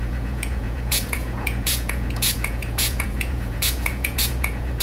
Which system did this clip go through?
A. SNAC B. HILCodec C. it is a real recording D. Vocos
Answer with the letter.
D